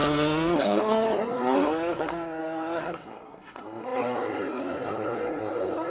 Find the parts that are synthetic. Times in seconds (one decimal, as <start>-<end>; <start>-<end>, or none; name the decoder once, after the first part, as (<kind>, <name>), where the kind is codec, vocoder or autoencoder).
0.0-5.9 (codec, SNAC)